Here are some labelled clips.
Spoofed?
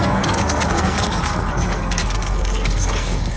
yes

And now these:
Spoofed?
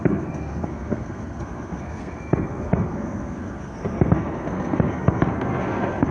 yes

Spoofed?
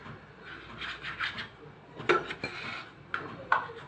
no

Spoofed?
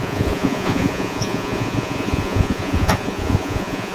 yes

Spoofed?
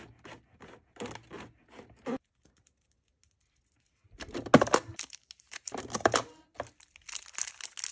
no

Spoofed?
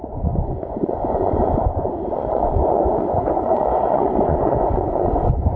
yes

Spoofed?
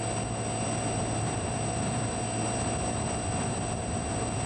no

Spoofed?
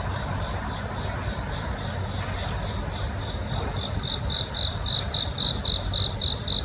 no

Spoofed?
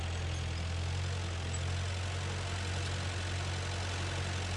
no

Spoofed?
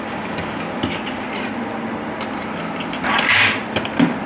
no